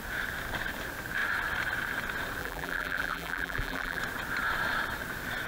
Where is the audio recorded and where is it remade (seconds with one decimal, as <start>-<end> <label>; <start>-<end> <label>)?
0.0-2.4 recorded; 2.4-4.0 remade; 4.0-5.5 recorded